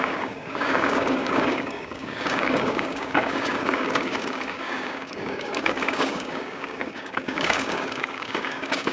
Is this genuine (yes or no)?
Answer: no